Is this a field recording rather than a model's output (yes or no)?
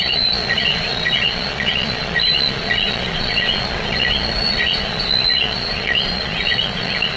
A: no